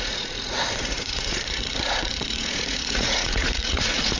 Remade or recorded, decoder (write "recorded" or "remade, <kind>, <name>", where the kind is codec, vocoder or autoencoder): remade, vocoder, Vocos